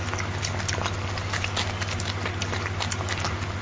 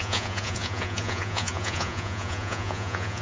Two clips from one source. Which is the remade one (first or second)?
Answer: second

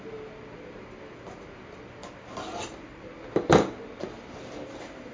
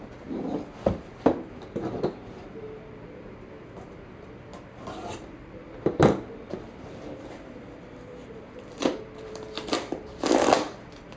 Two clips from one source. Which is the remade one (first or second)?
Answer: second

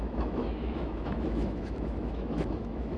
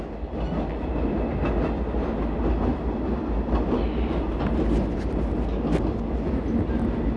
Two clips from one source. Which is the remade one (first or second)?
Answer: first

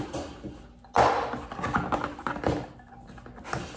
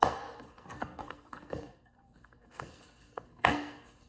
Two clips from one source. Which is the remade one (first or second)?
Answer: second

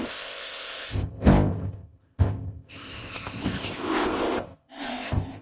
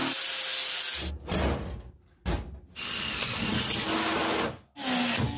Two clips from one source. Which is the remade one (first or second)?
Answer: first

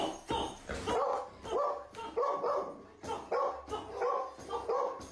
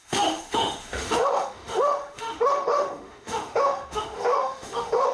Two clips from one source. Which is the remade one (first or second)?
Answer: second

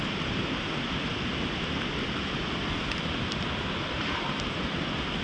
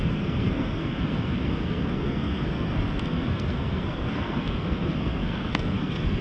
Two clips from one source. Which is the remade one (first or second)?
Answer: second